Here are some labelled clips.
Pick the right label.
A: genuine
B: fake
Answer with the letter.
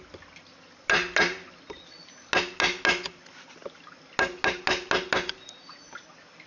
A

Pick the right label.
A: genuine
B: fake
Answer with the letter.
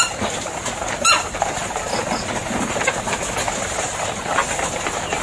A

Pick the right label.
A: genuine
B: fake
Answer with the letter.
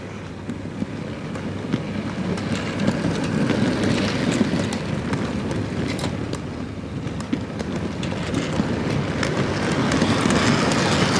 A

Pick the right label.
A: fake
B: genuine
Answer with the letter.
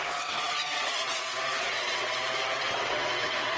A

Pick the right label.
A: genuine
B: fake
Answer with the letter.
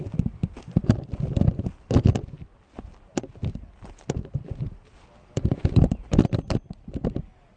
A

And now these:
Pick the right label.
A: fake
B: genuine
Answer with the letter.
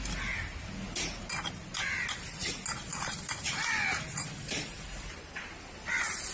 B